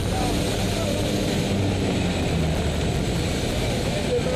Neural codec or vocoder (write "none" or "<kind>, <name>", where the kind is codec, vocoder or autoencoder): none